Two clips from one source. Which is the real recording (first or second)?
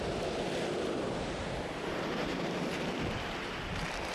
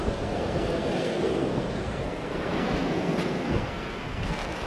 first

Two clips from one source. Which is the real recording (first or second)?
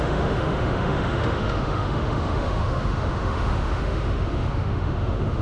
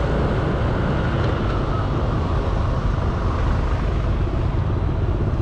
second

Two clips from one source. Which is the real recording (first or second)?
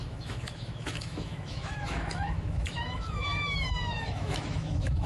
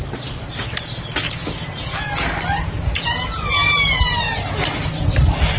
second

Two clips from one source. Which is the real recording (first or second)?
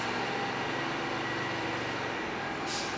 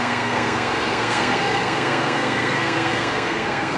first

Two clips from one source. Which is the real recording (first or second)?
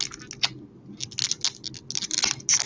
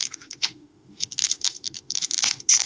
first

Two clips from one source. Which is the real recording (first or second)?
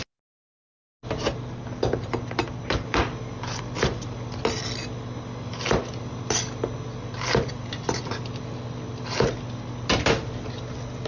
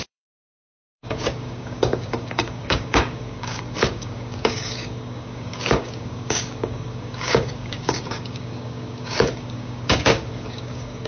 first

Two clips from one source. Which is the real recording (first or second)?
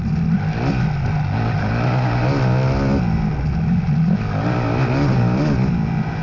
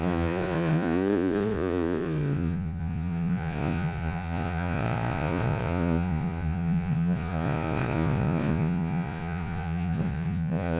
first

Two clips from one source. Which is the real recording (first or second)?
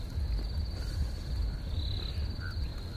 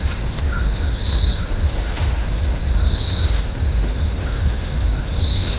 first